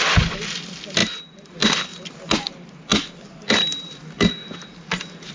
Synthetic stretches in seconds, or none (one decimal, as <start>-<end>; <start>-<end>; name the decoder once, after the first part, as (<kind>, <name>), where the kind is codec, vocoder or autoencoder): none

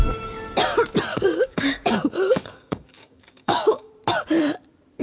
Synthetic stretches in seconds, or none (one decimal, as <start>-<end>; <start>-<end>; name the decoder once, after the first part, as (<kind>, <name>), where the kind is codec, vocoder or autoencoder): 1.1-3.9 (codec, DAC)

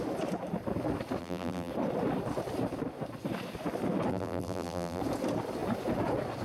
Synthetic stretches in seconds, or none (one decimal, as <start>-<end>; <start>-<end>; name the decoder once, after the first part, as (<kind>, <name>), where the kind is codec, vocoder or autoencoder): 1.2-1.7 (vocoder, BigVGAN v2); 4.1-5.0